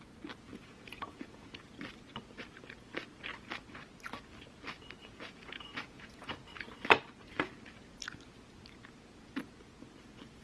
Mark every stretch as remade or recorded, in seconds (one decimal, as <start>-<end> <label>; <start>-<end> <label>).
0.0-0.5 recorded; 0.5-1.6 remade; 1.6-5.0 recorded; 5.0-6.3 remade; 6.3-10.4 recorded